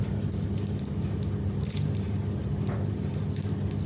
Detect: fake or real real